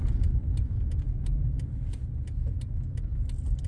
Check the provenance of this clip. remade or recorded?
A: recorded